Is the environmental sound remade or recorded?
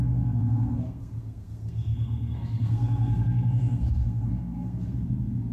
remade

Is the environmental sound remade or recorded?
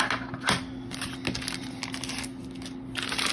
recorded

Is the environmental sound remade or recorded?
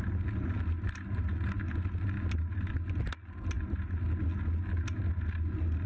recorded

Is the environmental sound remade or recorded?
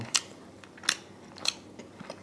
recorded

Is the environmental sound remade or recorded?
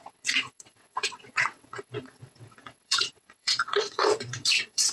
remade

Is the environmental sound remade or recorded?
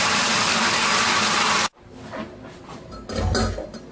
recorded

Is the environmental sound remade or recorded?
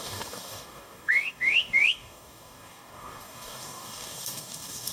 remade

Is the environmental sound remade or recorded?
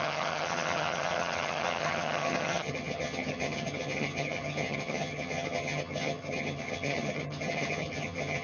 remade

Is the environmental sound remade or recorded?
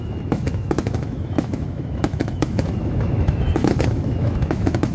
remade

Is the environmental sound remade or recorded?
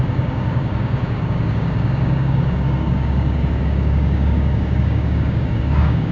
remade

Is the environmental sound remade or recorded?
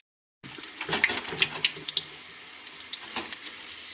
recorded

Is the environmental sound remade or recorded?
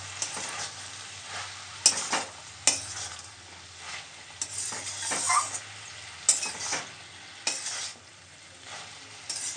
recorded